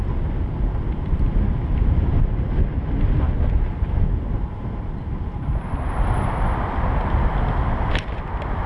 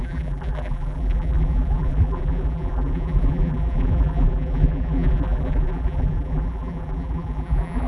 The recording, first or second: first